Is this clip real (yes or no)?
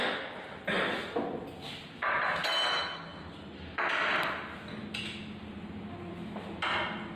yes